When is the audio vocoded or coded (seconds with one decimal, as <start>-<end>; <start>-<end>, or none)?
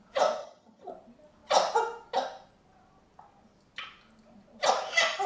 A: 0.4-0.9